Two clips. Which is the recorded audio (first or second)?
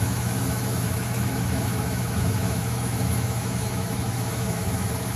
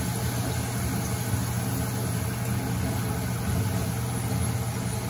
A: second